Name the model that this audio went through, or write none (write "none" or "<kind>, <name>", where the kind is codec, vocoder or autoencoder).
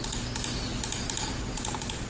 none